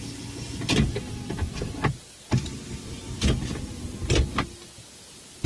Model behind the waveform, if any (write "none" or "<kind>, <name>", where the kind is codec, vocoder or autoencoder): none